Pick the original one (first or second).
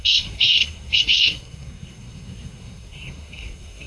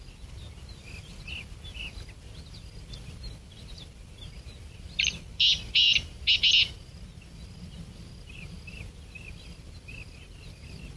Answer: second